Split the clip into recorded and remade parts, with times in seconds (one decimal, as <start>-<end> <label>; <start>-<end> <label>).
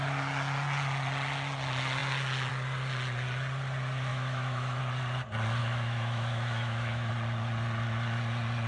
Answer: 0.0-4.1 recorded; 4.1-4.8 remade; 4.8-5.6 recorded; 5.6-7.1 remade; 7.1-8.7 recorded